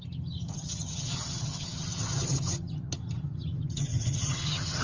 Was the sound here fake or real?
fake